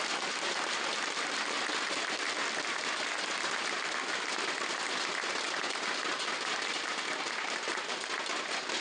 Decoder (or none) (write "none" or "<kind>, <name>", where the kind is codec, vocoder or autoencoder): none